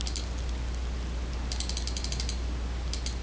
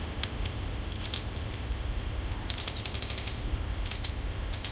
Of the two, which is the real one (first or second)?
first